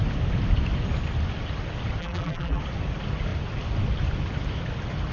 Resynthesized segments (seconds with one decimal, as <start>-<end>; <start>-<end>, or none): 2.0-2.6